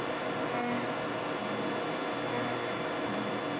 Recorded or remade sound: recorded